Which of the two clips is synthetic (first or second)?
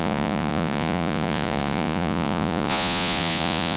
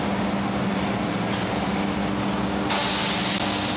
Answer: first